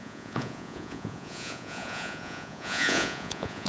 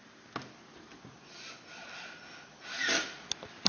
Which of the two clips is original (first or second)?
second